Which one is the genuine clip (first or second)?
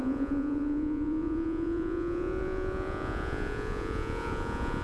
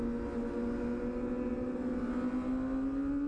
second